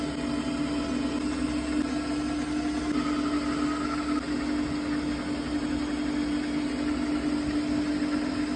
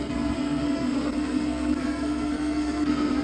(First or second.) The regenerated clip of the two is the second